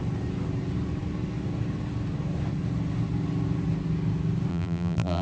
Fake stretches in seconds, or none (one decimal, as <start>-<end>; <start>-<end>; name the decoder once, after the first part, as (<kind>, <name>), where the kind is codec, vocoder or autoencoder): 4.5-5.2 (vocoder, BigVGAN v2)